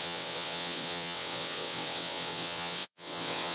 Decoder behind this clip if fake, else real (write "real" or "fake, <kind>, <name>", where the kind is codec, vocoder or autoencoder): fake, vocoder, WaveNeXt